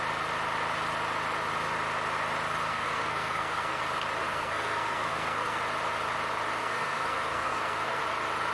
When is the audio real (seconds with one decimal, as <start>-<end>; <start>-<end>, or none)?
0.0-2.7; 3.8-4.2; 5.6-6.6; 8.0-8.5